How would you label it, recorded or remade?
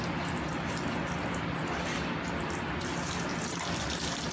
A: recorded